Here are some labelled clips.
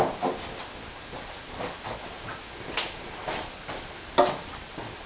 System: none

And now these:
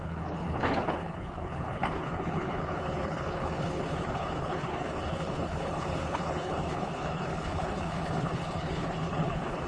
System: codec, HILCodec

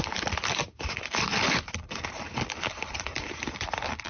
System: none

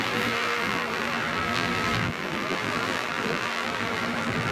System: vocoder, BigVGAN v2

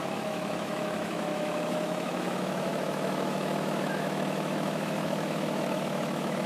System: autoencoder, DAC-VAE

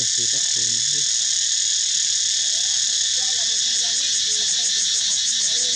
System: none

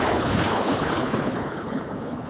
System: codec, HILCodec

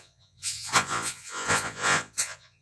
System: vocoder, Vocos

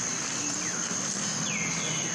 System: none